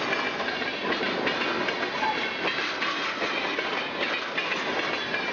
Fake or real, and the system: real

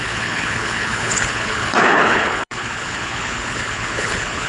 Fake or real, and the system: fake, codec, HILCodec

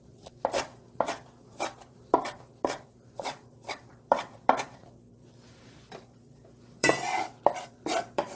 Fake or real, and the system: fake, vocoder, BigVGAN v2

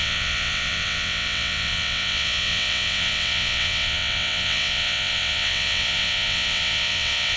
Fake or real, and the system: fake, vocoder, WaveNeXt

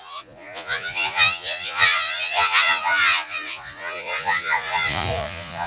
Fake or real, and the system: fake, vocoder, Vocos